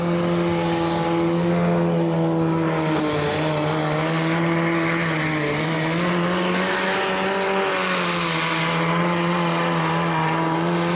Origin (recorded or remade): recorded